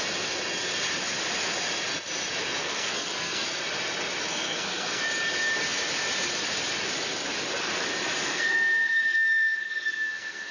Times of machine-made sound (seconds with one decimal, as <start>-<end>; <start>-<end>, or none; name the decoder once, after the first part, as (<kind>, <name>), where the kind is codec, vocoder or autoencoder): 2.6-3.6 (codec, SNAC); 4.3-5.0; 8.2-10.5